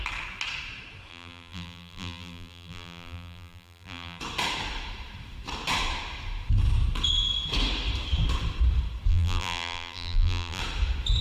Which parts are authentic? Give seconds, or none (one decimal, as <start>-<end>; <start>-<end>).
0.0-1.1; 4.2-9.1; 10.6-11.2